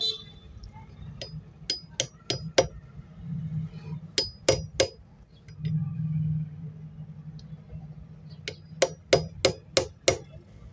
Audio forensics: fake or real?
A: real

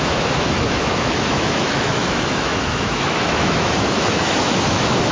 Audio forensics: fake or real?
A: fake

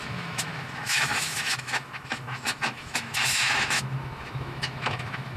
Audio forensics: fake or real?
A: fake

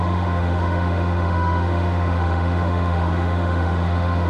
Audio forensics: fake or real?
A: fake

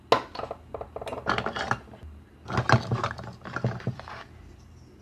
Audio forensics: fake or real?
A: real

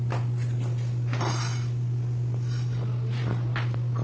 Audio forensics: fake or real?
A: real